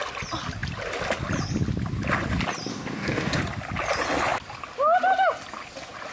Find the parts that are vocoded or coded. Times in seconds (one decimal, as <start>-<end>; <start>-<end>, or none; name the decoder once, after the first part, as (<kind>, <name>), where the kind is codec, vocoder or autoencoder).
2.7-3.4 (codec, DAC)